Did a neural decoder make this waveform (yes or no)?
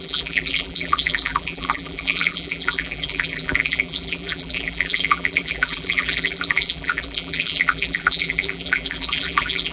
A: yes